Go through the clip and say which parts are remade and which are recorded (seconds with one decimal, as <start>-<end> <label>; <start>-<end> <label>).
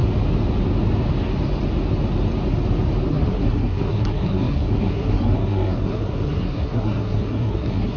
0.0-3.1 recorded; 3.1-8.0 remade